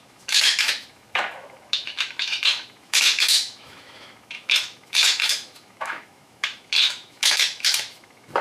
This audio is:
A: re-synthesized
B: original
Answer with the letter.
A